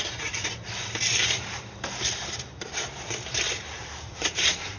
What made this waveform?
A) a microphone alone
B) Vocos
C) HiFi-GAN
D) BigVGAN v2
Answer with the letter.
D